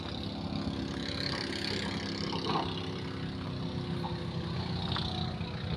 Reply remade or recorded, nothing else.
recorded